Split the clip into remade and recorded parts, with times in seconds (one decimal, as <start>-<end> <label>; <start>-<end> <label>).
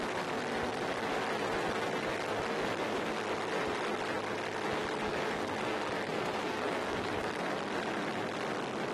0.0-5.0 recorded; 5.0-7.7 remade; 7.7-8.9 recorded